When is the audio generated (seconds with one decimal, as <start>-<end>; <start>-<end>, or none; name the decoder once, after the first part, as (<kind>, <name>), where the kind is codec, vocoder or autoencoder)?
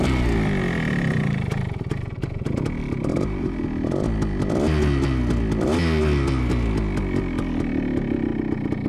3.1-3.6 (vocoder, BigVGAN v2)